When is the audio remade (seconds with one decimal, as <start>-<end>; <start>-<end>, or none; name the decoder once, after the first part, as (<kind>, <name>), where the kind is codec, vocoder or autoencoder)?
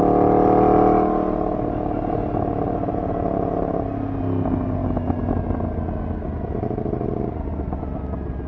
none